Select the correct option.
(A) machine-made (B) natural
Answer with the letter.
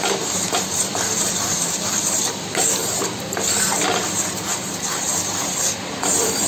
A